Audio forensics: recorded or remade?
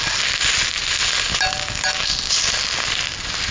recorded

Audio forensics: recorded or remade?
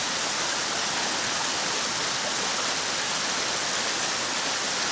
recorded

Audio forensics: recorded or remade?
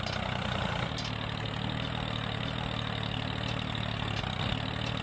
recorded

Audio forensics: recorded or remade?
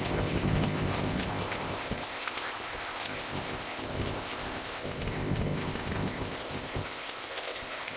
remade